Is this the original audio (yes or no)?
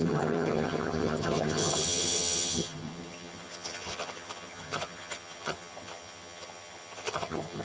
no